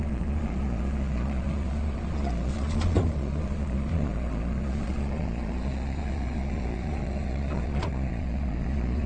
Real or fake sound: fake